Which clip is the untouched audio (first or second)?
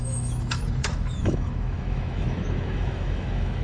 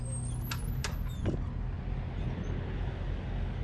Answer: second